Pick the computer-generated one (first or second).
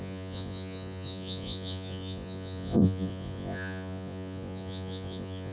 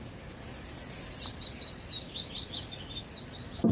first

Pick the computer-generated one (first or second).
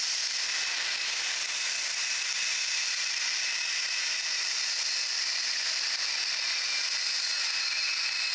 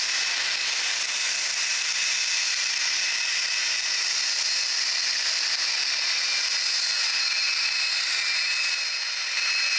first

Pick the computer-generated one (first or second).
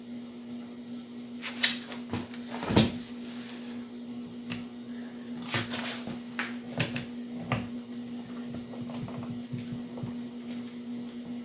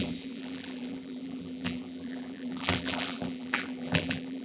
second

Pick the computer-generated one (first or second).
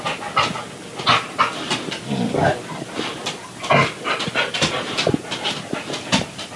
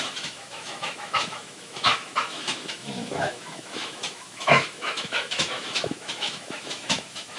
second